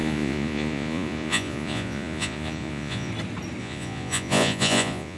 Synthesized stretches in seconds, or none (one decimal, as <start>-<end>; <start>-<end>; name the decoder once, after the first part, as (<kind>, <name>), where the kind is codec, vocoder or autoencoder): 0.0-3.1 (vocoder, Vocos); 3.6-5.2